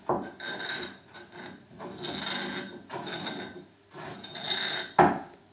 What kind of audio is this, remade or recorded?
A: recorded